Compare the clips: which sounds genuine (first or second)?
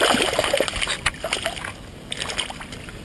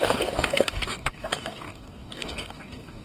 first